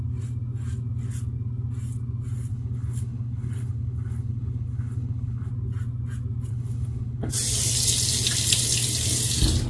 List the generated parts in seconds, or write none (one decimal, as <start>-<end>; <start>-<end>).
2.5-5.5; 6.5-7.3